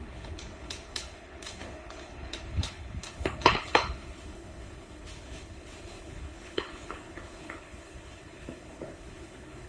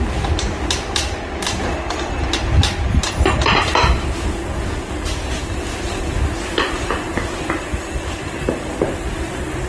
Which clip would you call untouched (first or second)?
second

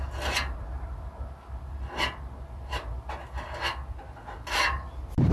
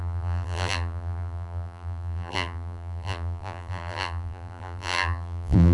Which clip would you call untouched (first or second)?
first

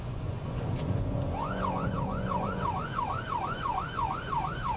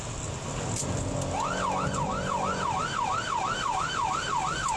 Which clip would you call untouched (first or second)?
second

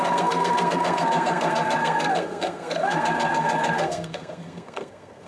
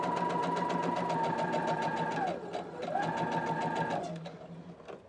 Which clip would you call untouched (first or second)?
second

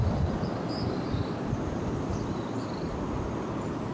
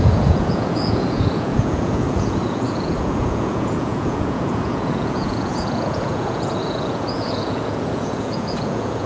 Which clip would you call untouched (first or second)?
first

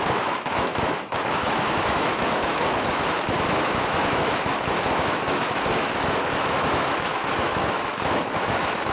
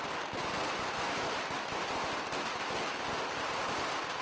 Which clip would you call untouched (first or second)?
second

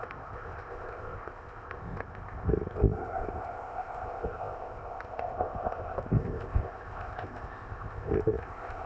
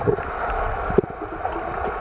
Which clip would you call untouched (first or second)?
second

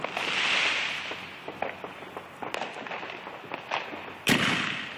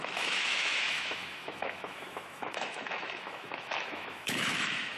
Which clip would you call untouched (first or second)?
first